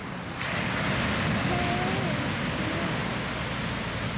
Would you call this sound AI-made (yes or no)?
no